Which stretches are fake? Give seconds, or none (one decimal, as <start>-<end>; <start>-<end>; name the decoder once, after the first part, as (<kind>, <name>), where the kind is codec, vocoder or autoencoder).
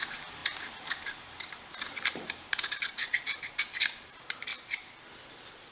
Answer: 0.0-4.5 (vocoder, BigVGAN v2); 5.2-5.7